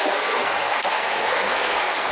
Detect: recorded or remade remade